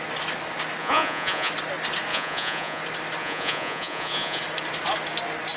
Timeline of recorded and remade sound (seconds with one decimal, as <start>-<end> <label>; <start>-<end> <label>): 0.0-0.8 recorded; 0.8-1.5 remade; 1.5-2.1 recorded; 2.1-2.8 remade; 2.8-3.2 recorded; 3.2-4.4 remade; 4.4-5.6 recorded